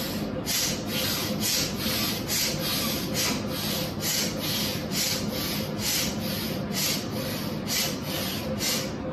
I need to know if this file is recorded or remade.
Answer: recorded